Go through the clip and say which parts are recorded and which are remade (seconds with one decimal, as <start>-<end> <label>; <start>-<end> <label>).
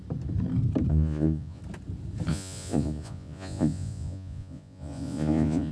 0.0-0.9 recorded; 0.9-1.6 remade; 1.6-2.3 recorded; 2.3-5.7 remade